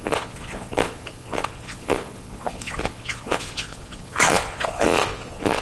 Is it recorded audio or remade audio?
remade